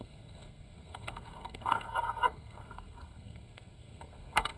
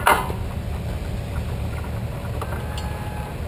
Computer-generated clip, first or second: first